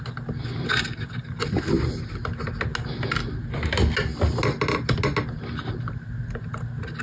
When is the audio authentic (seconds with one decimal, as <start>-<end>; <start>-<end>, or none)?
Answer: 0.0-7.0